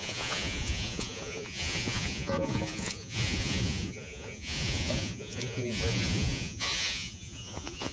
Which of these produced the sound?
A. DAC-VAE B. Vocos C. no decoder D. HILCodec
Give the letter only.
B